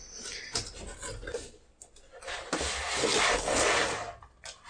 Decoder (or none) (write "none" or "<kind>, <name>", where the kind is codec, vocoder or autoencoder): none